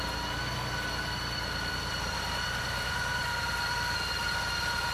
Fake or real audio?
real